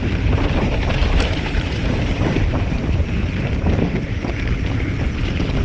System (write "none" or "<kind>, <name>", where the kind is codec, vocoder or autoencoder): vocoder, BigVGAN v2